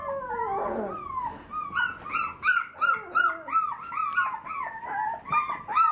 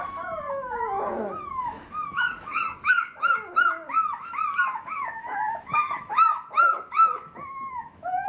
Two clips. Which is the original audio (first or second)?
first